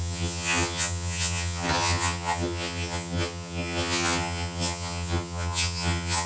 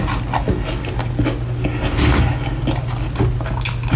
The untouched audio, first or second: second